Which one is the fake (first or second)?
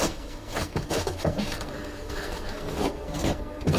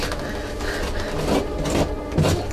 first